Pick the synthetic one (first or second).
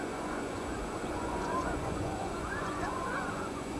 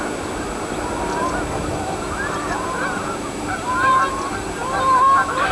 first